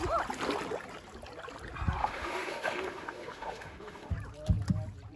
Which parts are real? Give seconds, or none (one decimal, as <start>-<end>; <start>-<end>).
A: 0.0-2.0; 4.1-5.2